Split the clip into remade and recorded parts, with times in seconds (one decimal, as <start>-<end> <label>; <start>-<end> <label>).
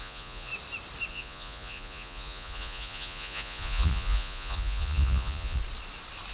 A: 0.0-0.5 remade; 0.5-1.1 recorded; 1.1-5.6 remade; 5.6-6.3 recorded